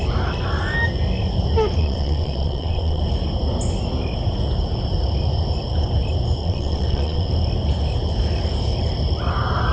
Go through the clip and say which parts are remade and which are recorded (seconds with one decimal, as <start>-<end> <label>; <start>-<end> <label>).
0.0-1.8 recorded; 1.8-3.0 remade; 3.0-6.4 recorded; 6.4-7.3 remade; 7.3-9.7 recorded